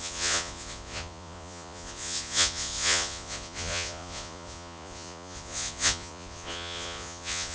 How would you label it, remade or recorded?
remade